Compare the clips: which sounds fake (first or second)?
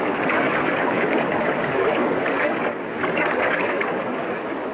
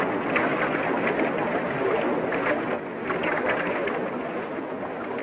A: first